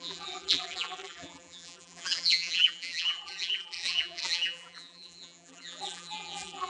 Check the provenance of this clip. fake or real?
fake